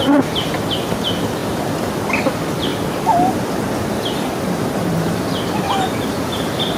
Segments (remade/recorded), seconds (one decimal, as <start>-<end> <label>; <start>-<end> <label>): 0.0-2.7 recorded; 2.7-3.3 remade; 3.3-6.8 recorded